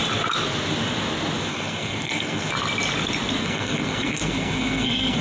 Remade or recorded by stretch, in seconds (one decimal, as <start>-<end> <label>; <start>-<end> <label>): 0.0-1.5 recorded; 1.5-2.5 remade; 2.5-3.4 recorded; 3.4-5.2 remade